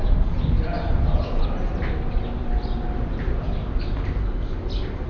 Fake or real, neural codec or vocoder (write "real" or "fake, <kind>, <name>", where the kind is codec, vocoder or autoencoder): real